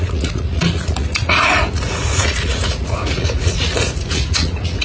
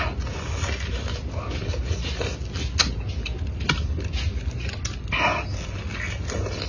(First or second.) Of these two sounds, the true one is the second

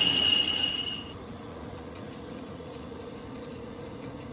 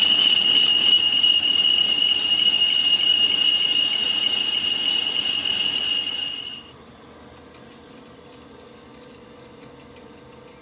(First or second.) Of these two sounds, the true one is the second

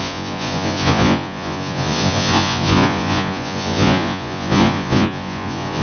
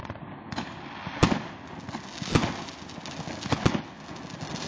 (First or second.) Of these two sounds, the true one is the second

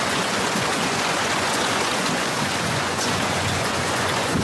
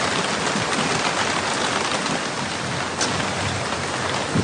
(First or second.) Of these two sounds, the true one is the second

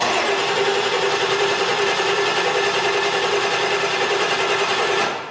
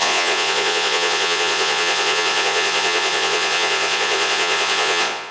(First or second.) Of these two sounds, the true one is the first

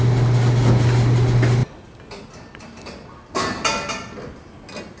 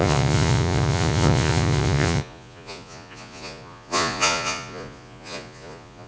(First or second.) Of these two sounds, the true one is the first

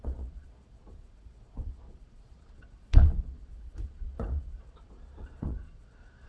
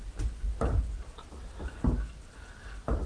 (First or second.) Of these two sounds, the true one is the second